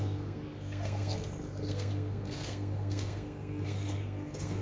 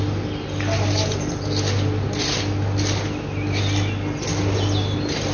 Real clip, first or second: second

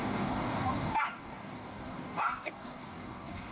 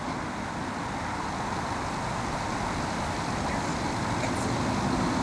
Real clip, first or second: second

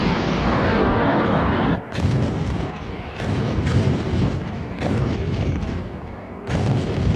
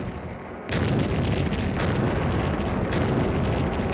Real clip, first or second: second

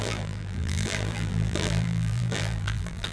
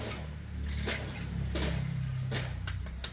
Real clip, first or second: second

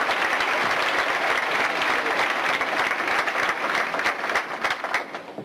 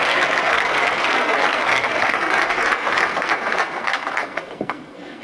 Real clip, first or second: first